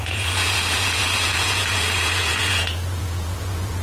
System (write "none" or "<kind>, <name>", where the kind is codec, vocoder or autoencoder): vocoder, Vocos